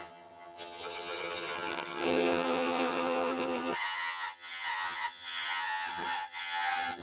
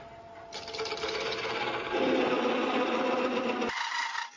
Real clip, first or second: second